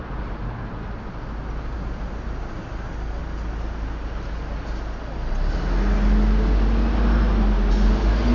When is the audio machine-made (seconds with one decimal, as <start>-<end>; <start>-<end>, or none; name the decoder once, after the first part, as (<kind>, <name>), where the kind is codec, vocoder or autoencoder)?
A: none